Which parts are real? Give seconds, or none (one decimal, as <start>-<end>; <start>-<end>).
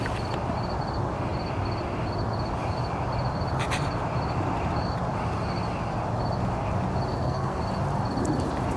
0.0-7.1; 7.6-8.8